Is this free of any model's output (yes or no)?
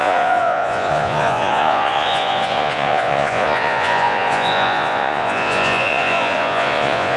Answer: no